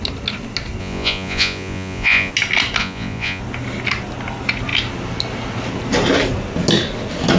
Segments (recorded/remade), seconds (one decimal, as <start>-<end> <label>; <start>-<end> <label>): 0.0-0.8 recorded; 0.8-2.3 remade; 2.3-2.8 recorded; 2.8-3.4 remade; 3.4-7.4 recorded